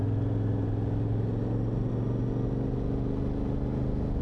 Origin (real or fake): real